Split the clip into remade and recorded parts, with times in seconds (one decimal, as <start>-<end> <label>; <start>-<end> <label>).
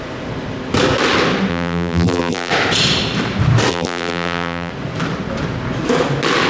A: 0.0-1.5 recorded; 1.5-2.5 remade; 2.5-3.7 recorded; 3.7-4.7 remade; 4.7-6.5 recorded